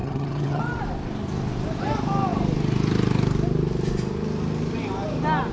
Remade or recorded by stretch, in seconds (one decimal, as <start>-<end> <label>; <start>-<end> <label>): 0.0-0.6 remade; 0.6-5.5 recorded